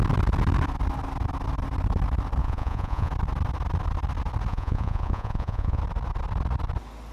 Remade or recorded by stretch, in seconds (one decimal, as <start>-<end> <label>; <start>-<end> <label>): 0.0-2.4 recorded; 2.4-3.1 remade; 3.1-4.5 recorded; 4.5-5.8 remade; 5.8-7.1 recorded